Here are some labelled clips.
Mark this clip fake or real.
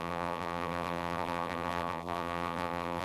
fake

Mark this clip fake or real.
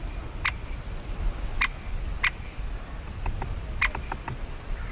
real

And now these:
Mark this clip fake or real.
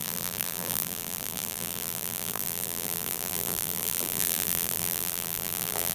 fake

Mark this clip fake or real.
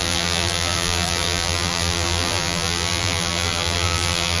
fake